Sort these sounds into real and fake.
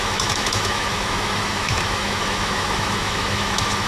fake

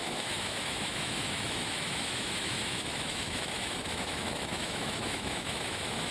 fake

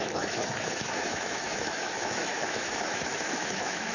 fake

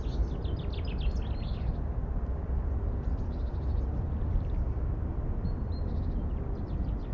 real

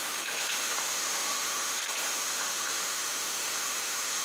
fake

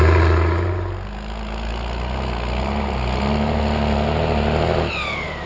real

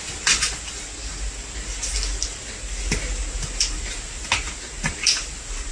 real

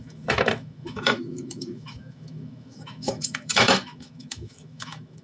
fake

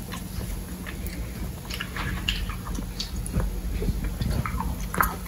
real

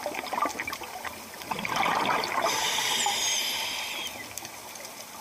real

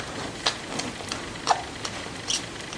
real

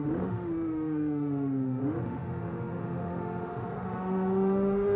fake